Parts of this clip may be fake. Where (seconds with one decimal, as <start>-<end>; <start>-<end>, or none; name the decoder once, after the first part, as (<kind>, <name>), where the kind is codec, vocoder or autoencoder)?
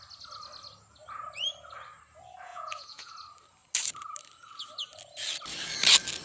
2.5-3.1 (vocoder, Vocos)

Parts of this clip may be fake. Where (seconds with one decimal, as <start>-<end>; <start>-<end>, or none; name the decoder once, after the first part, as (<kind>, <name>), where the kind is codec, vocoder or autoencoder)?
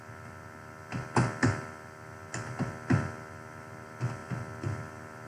none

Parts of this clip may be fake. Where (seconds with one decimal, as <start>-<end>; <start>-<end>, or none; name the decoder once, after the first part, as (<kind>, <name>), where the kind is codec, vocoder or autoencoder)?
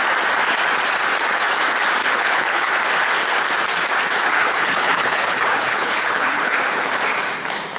2.0-2.7 (codec, HILCodec); 4.3-6.9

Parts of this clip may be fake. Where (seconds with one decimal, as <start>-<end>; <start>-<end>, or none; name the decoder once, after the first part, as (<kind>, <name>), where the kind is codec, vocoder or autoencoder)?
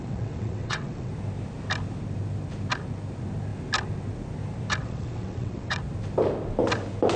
0.0-1.1 (vocoder, WaveNeXt); 4.8-5.8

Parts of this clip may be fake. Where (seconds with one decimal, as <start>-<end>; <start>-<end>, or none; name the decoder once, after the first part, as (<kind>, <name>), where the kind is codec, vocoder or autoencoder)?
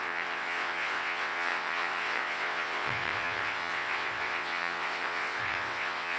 0.0-6.2 (vocoder, WaveNeXt)